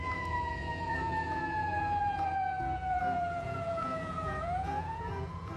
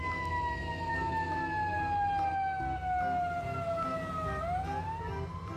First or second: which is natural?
second